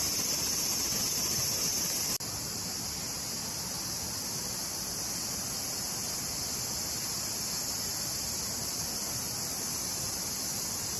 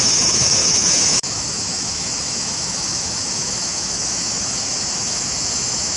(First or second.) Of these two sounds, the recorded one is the first